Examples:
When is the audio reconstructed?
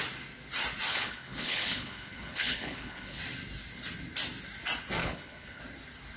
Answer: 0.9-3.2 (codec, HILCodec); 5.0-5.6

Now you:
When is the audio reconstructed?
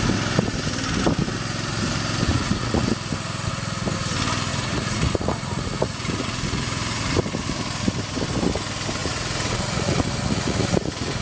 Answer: 2.3-2.9 (vocoder, Vocos); 4.5-7.2; 9.0-11.2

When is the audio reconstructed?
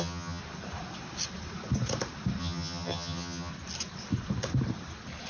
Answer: 0.0-0.4 (vocoder, HiFi-GAN); 2.4-3.5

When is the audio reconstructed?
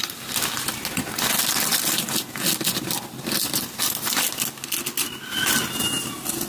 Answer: none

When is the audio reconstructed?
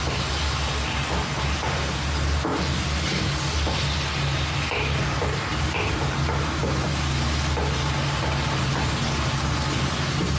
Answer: none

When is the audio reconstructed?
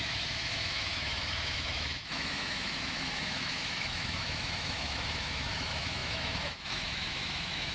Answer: 0.0-7.7 (autoencoder, DAC-VAE)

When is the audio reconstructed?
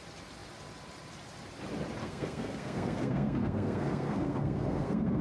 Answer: 2.0-5.2 (codec, SNAC)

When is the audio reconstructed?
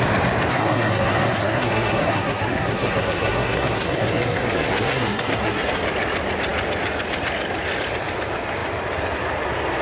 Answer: 0.5-5.8 (codec, SNAC)